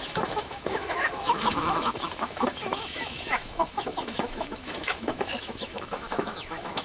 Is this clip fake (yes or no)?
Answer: yes